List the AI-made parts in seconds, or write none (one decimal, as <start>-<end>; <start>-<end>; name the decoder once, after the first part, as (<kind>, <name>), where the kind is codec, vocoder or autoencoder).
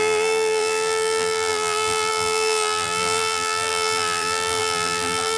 0.0-5.4 (vocoder, BigVGAN v2)